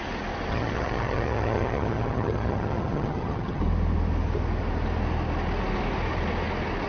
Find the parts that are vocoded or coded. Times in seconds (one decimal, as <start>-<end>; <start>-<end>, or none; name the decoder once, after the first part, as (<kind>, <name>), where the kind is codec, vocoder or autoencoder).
0.5-3.6 (vocoder, HiFi-GAN)